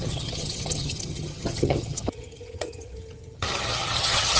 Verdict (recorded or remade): remade